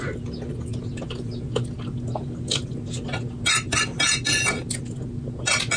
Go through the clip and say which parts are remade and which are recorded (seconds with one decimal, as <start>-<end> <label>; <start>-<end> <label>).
0.0-5.8 recorded